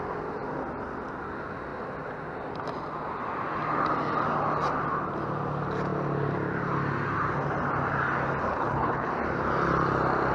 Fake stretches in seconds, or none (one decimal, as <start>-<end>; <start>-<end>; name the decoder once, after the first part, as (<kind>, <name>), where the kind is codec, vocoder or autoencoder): 8.5-9.1 (codec, HILCodec)